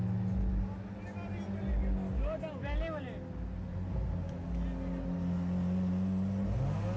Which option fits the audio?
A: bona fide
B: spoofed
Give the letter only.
A